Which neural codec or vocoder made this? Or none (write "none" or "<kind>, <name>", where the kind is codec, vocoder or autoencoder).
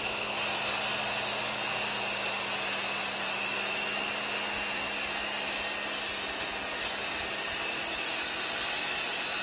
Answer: none